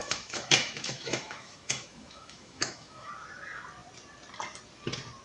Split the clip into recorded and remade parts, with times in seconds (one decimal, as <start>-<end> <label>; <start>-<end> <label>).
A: 0.0-3.1 remade; 3.1-5.2 recorded